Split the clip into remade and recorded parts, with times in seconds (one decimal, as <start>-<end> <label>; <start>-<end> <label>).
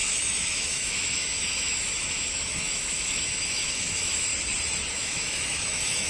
0.0-4.3 remade; 4.3-4.9 recorded; 4.9-6.1 remade